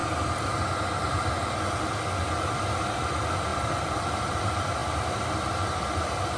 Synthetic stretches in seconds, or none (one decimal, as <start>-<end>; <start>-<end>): 3.0-6.4